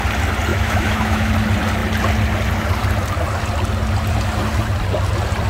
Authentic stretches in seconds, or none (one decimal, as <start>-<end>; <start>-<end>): 0.0-0.5; 1.3-5.5